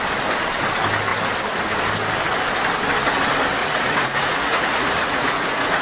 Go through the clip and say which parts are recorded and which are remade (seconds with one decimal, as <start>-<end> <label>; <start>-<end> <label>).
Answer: 0.0-3.6 recorded; 3.6-5.8 remade